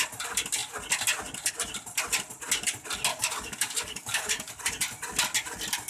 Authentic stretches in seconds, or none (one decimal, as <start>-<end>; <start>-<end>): 0.0-3.1; 4.5-5.9